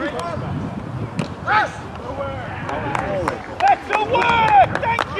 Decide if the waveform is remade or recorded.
recorded